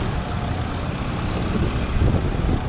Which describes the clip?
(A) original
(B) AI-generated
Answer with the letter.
A